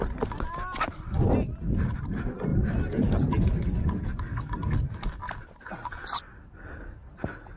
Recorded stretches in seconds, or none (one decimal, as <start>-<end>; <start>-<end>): 0.0-7.6